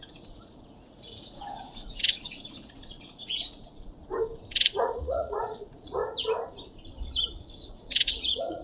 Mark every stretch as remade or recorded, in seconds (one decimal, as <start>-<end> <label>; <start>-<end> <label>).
0.0-4.0 remade; 4.0-4.5 recorded; 4.5-6.0 remade; 6.0-7.7 recorded; 7.7-8.6 remade